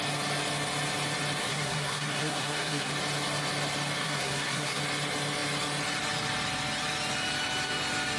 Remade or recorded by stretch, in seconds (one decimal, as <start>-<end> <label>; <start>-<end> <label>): 0.0-1.4 recorded; 1.4-2.9 remade; 2.9-4.0 recorded; 4.0-4.8 remade; 4.8-8.2 recorded